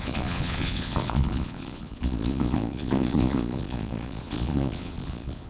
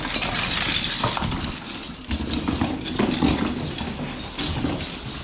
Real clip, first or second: second